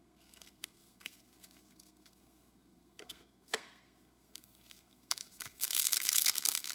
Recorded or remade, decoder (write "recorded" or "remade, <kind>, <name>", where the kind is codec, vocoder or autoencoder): remade, codec, SNAC